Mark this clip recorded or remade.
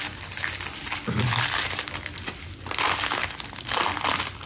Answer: recorded